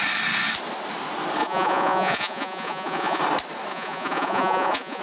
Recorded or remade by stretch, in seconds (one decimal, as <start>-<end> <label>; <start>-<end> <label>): 0.0-1.4 recorded; 1.4-3.2 remade; 3.2-3.7 recorded; 3.7-5.0 remade